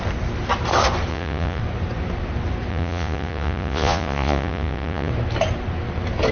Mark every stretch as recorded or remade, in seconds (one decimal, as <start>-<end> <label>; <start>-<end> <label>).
0.0-1.1 recorded; 1.1-1.6 remade; 1.6-2.7 recorded; 2.7-5.1 remade; 5.1-6.3 recorded